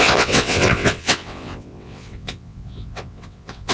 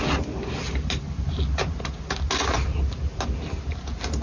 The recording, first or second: second